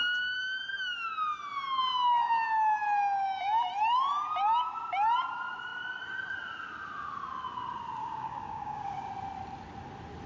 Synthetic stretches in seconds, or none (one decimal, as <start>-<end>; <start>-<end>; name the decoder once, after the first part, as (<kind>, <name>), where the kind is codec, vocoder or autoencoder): 8.0-9.1 (codec, DAC)